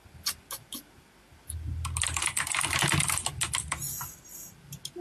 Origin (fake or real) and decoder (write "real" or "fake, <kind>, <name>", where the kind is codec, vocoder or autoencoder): real